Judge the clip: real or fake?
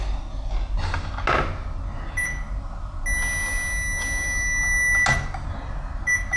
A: real